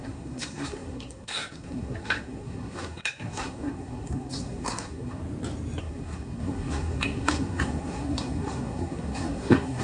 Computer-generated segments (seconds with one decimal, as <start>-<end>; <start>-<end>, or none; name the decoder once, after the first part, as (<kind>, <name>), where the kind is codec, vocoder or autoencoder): 0.0-5.2 (codec, SNAC); 5.8-9.8